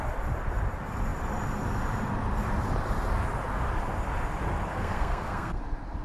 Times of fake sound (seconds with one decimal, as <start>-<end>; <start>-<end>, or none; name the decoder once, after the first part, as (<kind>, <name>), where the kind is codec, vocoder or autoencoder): 4.7-5.6 (codec, SNAC)